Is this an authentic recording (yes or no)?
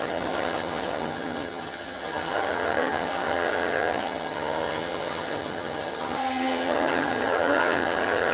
no